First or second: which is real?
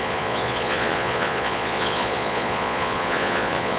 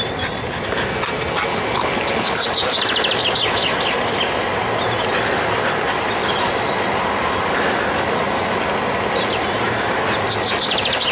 second